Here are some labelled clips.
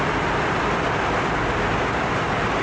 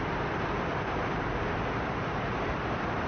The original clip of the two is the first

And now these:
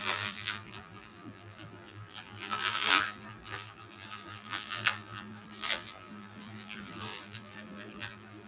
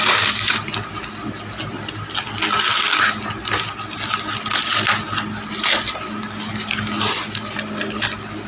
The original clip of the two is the second